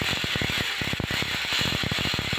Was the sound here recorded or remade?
recorded